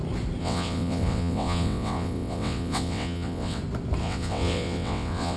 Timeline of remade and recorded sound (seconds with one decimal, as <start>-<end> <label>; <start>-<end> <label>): 0.0-0.4 recorded; 0.4-3.6 remade; 3.6-4.0 recorded; 4.0-5.4 remade